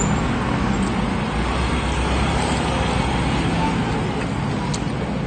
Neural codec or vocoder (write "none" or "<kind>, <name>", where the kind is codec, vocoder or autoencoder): none